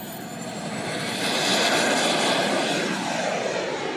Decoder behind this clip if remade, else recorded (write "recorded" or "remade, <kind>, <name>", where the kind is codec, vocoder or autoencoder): recorded